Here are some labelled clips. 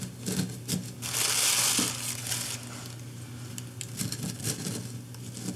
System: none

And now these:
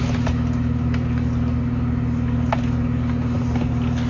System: none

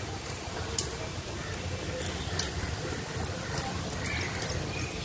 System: none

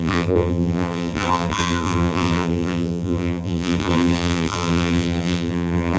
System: vocoder, BigVGAN v2